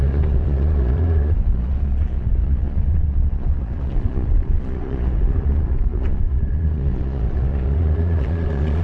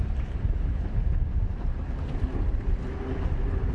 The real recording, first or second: second